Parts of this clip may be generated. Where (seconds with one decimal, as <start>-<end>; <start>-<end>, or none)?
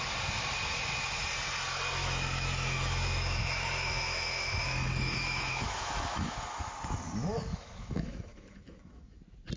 2.0-6.7; 7.5-9.2